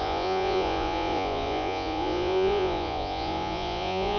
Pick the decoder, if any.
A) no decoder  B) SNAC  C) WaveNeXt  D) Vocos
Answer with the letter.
D